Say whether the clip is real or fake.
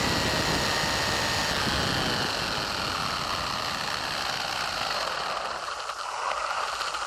real